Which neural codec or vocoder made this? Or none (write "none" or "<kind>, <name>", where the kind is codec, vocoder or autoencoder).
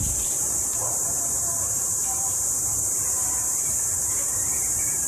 vocoder, BigVGAN v2